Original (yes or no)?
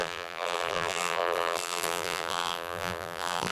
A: no